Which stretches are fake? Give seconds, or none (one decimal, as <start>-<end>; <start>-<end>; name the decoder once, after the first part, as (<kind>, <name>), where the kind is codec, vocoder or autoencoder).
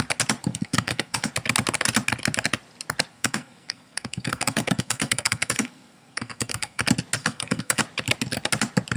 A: 0.5-1.3 (codec, SNAC); 3.1-6.8; 7.2-7.8